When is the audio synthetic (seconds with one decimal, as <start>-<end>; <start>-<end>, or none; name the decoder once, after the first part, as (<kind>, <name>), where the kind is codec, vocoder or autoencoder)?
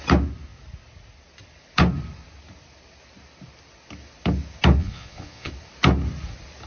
4.8-5.5 (vocoder, Vocos)